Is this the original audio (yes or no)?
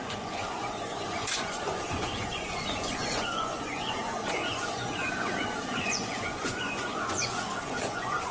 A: no